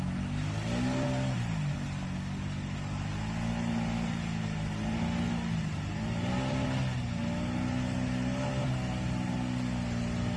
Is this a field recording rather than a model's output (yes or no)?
yes